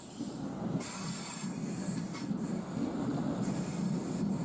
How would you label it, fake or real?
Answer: real